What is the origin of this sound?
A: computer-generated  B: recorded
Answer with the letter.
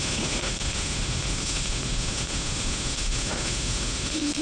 A